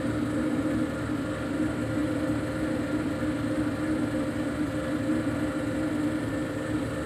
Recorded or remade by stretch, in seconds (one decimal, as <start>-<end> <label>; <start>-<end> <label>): 0.0-7.1 recorded